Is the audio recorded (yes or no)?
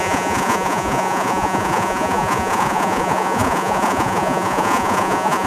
no